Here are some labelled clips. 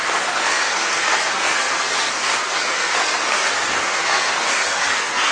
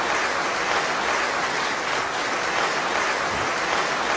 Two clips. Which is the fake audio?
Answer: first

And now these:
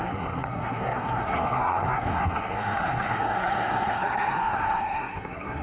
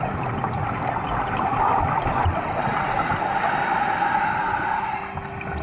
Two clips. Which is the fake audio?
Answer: first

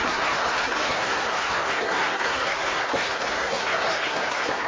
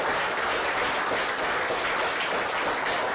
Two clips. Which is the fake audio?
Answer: first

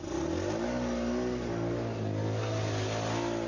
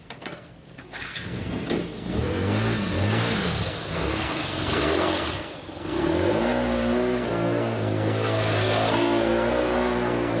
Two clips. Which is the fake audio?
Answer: second